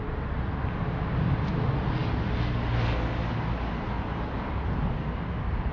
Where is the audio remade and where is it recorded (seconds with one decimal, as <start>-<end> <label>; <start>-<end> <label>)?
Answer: 0.0-5.7 recorded